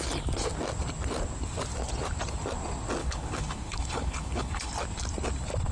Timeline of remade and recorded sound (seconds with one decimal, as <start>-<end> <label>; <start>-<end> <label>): 0.0-3.0 recorded; 3.0-4.7 remade; 4.7-5.7 recorded